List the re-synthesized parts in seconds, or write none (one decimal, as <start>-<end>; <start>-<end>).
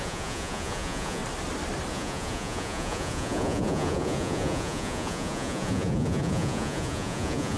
0.0-1.2; 1.9-7.6